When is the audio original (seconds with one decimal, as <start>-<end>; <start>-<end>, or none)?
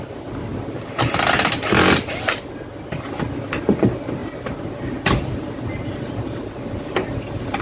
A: 0.0-0.5; 1.1-4.2; 7.1-7.6